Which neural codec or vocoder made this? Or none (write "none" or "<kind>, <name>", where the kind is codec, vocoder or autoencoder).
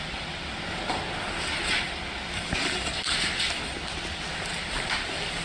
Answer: none